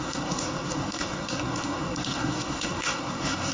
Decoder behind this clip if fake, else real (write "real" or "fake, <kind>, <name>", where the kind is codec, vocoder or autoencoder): fake, codec, SNAC